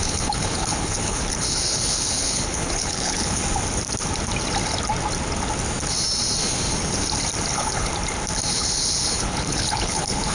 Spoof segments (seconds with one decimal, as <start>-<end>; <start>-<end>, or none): 0.0-3.4; 7.5-7.9; 8.5-10.3